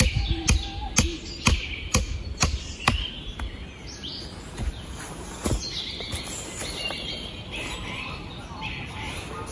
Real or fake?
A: real